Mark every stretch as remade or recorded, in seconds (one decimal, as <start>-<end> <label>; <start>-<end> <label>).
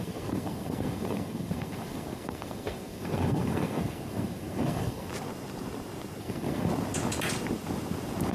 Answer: 0.0-5.1 remade; 5.1-6.2 recorded; 6.2-6.7 remade; 6.7-8.3 recorded